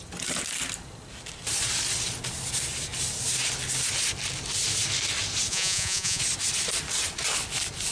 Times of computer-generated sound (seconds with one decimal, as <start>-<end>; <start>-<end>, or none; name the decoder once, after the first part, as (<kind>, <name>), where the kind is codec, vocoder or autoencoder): 5.5-6.2 (vocoder, Vocos)